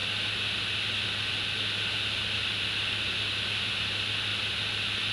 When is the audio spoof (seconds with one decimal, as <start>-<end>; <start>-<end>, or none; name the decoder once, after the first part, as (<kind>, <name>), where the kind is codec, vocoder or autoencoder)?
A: none

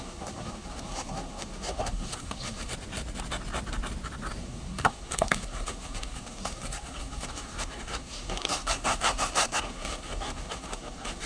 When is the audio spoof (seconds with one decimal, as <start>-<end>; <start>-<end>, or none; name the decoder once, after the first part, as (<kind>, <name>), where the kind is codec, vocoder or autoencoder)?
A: 0.0-2.7 (codec, SNAC); 4.4-11.3